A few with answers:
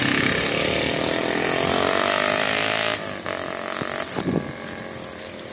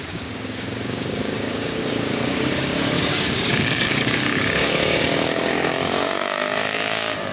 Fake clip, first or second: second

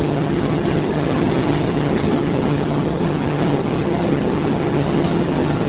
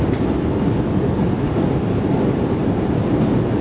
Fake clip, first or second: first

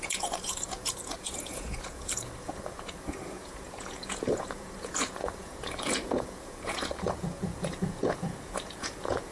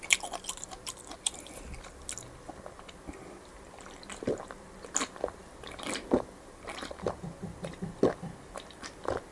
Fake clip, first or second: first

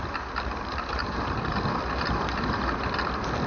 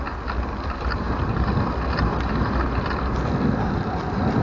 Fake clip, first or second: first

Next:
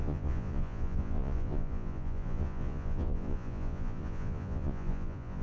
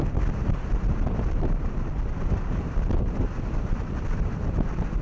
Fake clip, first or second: first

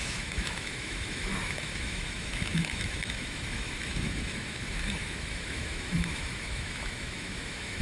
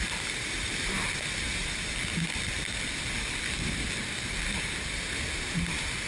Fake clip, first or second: first